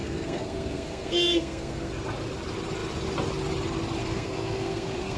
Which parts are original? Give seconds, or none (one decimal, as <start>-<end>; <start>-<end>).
1.9-4.0